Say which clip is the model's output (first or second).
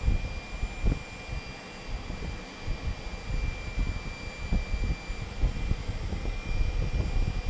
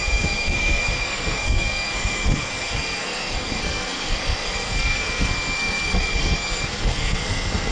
second